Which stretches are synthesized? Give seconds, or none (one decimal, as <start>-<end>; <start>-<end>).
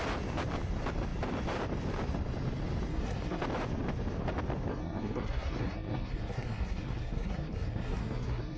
2.9-3.4; 4.7-8.6